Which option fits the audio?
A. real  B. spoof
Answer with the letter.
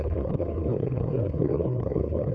B